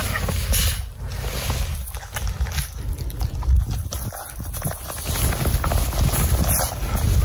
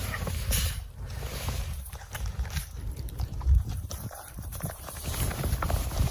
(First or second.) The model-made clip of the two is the second